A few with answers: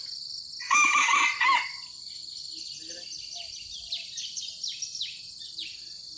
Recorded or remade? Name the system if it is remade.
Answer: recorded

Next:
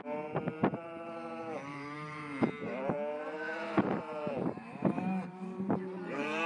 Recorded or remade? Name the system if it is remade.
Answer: remade, vocoder, BigVGAN v2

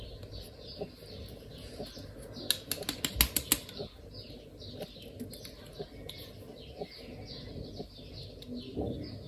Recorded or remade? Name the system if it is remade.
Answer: recorded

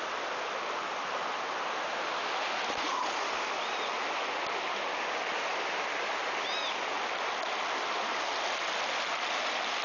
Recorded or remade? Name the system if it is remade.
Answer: recorded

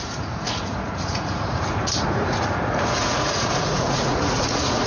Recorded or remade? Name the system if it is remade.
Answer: remade, vocoder, Vocos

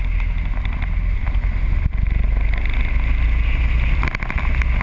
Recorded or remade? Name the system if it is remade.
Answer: recorded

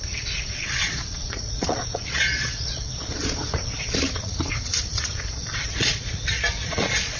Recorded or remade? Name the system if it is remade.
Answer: remade, vocoder, Vocos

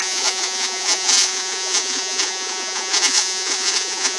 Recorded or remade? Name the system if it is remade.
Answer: remade, vocoder, Vocos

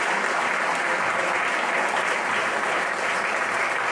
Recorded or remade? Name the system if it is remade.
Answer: recorded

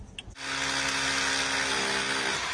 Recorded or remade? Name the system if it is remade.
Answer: recorded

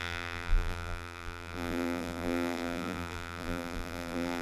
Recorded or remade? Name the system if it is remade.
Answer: remade, vocoder, BigVGAN v2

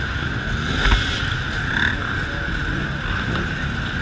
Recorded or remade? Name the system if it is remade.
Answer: recorded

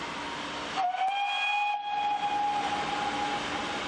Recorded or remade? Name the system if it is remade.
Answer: recorded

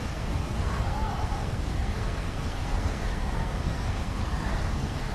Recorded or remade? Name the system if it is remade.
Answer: remade, codec, SNAC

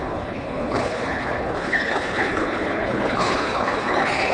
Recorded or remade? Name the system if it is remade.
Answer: remade, codec, HILCodec